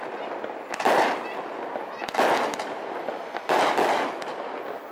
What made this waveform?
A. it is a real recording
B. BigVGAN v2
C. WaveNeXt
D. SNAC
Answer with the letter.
A